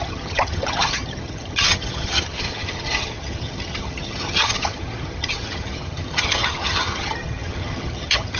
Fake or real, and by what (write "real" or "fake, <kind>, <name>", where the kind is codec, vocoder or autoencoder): fake, vocoder, HiFi-GAN